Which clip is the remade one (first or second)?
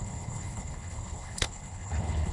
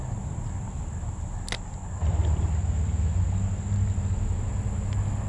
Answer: first